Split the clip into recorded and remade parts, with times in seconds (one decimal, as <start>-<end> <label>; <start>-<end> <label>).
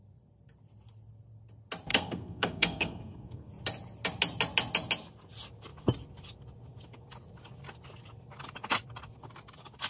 0.0-1.9 recorded; 1.9-3.5 remade; 3.5-9.9 recorded